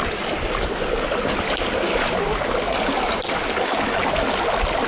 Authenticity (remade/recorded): recorded